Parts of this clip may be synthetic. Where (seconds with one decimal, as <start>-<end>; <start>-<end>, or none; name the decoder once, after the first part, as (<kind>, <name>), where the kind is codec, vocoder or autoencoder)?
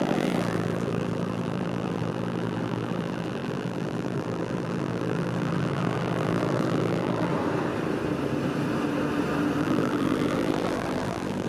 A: 0.0-7.3 (vocoder, BigVGAN v2); 9.6-11.5